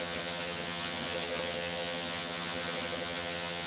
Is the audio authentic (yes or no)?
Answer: no